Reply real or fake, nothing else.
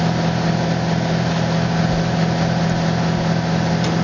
real